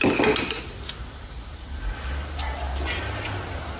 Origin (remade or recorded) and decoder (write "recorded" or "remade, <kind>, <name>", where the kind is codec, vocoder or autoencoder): recorded